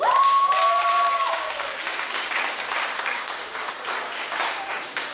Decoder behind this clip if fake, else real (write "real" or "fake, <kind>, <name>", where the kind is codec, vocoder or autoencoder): fake, codec, DAC